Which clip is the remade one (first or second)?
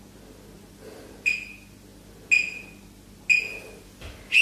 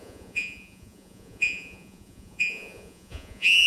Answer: second